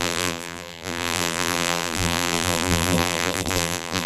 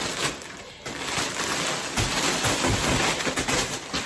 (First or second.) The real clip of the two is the second